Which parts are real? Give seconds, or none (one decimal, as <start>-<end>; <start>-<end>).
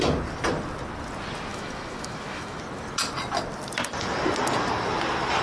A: 0.0-1.5; 2.6-5.4